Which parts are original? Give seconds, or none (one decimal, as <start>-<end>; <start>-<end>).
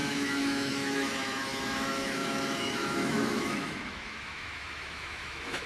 none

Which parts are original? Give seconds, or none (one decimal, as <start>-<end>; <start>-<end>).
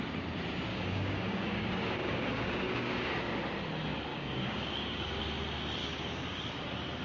0.0-0.7; 3.1-4.1; 5.2-5.8; 6.4-7.0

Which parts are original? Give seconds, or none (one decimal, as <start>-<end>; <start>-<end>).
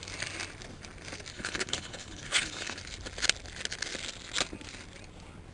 0.0-1.3; 2.8-5.5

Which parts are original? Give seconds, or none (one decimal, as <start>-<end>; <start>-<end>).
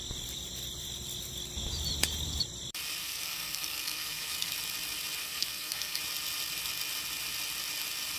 0.0-3.0; 4.5-5.2; 6.0-8.2